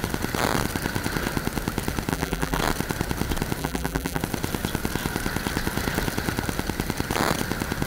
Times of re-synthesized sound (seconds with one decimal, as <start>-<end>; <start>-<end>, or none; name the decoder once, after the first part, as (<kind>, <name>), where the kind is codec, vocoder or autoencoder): 2.1-2.6 (vocoder, BigVGAN v2); 3.6-4.2